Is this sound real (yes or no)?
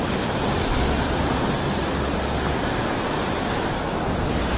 yes